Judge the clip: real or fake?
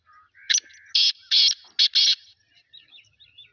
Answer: real